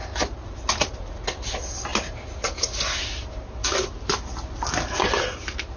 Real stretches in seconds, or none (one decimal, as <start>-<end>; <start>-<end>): 0.0-5.8